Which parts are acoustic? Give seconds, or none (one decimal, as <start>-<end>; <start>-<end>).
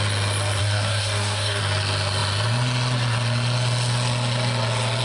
0.0-0.6; 1.6-5.0